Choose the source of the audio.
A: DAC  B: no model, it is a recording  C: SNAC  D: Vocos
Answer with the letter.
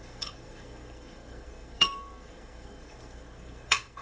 C